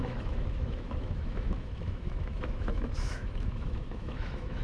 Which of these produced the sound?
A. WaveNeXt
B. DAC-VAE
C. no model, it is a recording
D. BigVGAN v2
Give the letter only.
B